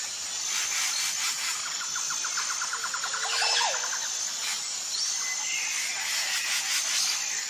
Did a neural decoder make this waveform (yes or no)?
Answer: no